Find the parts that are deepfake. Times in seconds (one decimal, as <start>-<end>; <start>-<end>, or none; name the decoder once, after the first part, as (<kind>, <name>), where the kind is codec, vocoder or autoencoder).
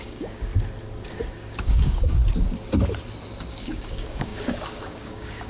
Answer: 0.0-0.5 (codec, DAC); 1.3-2.2; 3.5-5.5